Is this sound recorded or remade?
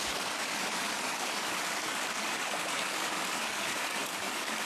remade